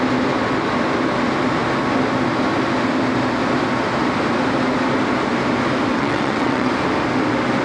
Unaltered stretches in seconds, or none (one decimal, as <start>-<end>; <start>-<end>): 0.0-5.9; 6.7-7.6